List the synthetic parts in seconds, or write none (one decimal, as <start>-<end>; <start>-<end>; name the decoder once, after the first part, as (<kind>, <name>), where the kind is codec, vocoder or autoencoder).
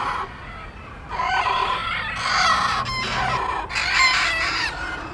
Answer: none